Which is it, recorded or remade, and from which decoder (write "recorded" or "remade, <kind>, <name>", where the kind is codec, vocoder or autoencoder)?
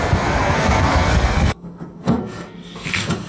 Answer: remade, codec, SNAC